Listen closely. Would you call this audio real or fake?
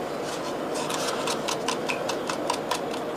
real